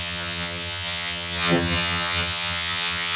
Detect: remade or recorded remade